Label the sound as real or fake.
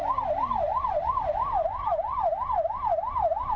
real